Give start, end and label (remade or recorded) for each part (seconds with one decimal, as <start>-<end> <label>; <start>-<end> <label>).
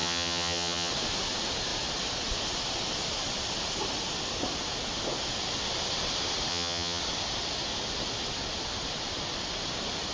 0.0-0.9 remade; 0.9-6.5 recorded; 6.5-7.0 remade; 7.0-10.1 recorded